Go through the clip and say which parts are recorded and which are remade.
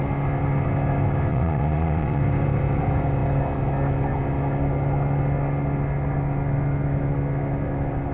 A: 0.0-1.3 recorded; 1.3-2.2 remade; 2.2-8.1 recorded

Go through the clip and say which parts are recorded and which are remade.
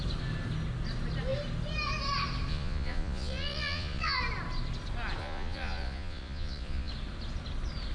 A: 0.0-2.5 recorded; 2.5-4.2 remade; 4.2-5.2 recorded; 5.2-6.9 remade; 6.9-7.9 recorded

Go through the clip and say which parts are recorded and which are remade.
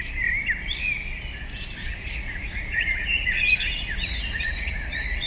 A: 0.0-1.8 recorded; 1.8-5.3 remade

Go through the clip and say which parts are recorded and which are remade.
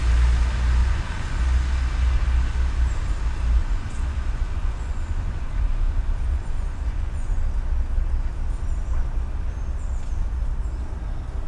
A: 0.0-0.8 recorded; 0.8-1.4 remade; 1.4-3.6 recorded; 3.6-7.4 remade; 7.4-11.5 recorded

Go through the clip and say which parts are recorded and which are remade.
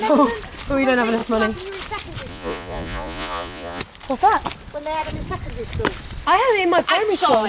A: 0.0-2.3 recorded; 2.3-3.8 remade; 3.8-7.5 recorded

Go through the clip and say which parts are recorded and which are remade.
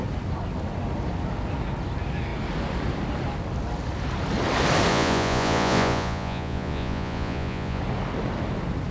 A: 0.0-4.9 recorded; 4.9-7.8 remade; 7.8-8.9 recorded